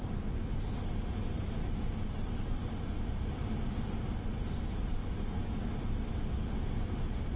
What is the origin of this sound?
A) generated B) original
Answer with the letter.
B